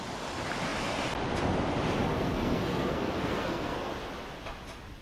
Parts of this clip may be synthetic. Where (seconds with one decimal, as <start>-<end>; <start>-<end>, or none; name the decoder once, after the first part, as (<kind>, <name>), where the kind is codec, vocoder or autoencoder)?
2.0-3.9 (codec, SNAC)